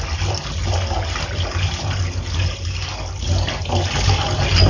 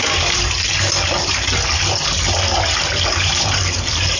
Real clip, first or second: first